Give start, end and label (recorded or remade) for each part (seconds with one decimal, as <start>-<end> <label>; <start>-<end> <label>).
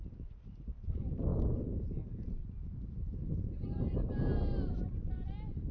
0.0-5.7 remade